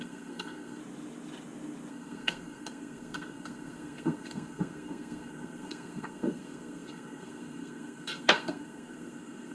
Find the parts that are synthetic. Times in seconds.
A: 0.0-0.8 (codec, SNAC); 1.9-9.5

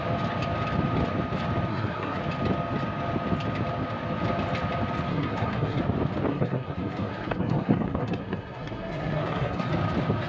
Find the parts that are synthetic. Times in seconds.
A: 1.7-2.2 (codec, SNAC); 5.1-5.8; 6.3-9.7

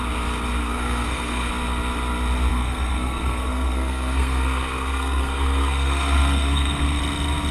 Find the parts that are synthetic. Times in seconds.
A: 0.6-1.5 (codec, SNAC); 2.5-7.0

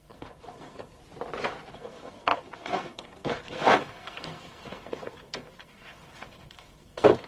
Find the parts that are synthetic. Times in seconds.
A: 0.0-1.0 (codec, SNAC); 1.7-7.3